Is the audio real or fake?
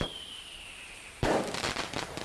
fake